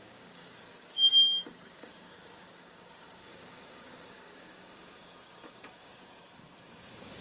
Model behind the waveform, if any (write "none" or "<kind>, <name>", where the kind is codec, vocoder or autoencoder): codec, DAC